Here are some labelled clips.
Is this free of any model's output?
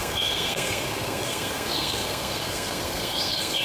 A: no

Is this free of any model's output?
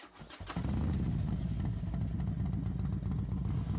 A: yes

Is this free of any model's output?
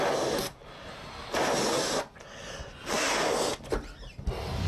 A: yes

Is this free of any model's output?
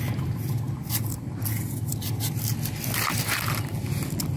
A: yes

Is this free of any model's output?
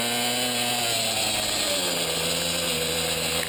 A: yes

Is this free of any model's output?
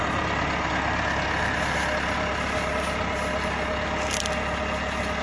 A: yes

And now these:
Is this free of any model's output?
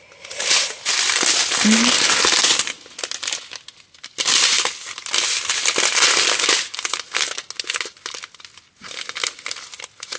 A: yes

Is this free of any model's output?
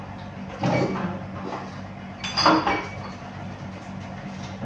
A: yes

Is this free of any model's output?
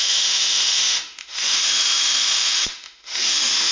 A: no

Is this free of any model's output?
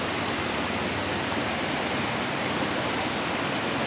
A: yes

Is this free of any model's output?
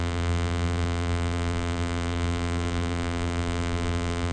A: no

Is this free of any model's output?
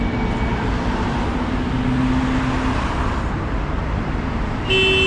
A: yes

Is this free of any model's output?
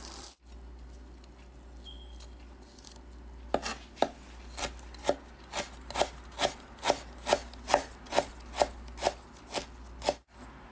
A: yes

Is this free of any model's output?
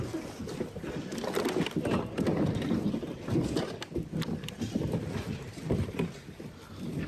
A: yes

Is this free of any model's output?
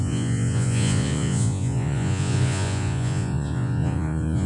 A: no